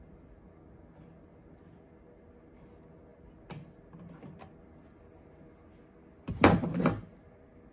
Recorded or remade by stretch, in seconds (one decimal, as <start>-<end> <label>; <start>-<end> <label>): 0.0-7.7 recorded